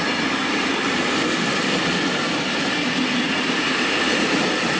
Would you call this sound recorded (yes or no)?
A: yes